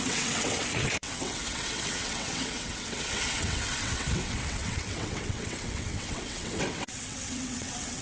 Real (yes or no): no